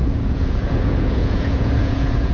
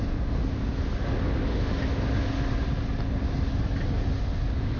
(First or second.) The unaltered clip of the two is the second